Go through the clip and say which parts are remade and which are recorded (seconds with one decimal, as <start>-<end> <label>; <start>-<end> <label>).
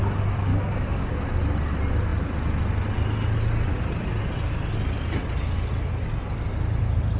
0.0-0.5 recorded; 0.5-1.1 remade; 1.1-7.2 recorded